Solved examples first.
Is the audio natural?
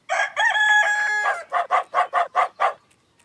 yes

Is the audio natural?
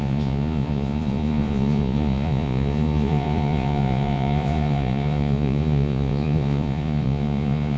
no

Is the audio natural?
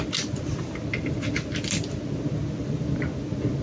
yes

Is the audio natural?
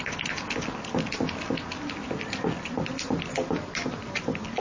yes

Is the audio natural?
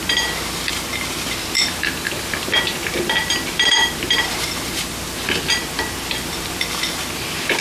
no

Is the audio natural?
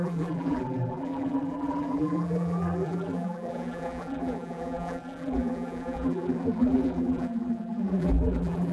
no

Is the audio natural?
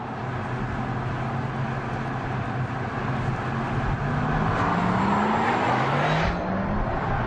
yes